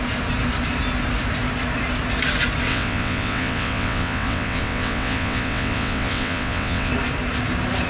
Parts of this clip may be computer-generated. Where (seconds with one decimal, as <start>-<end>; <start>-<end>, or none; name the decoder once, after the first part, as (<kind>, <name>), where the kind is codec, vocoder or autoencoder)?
2.7-6.9 (vocoder, WaveNeXt)